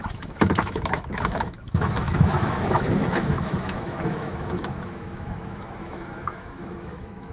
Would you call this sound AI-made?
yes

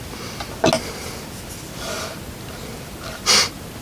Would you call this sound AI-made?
no